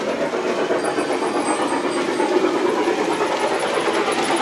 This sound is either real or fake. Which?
real